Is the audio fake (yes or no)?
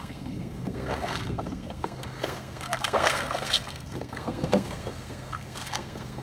yes